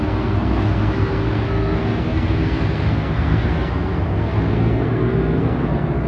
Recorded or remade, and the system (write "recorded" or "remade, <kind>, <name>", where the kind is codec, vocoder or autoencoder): remade, codec, SNAC